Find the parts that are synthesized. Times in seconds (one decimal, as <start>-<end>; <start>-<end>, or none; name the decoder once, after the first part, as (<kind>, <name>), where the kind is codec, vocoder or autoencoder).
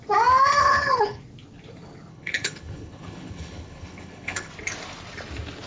0.6-1.2 (codec, HILCodec); 2.1-4.5